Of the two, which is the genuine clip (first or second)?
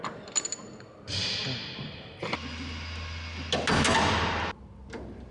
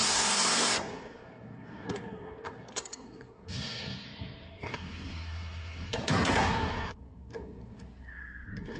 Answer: first